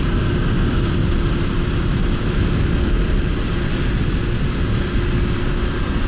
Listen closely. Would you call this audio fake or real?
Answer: real